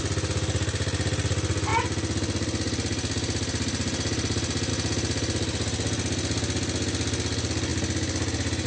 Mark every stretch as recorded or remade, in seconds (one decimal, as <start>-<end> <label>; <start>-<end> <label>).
0.0-8.7 recorded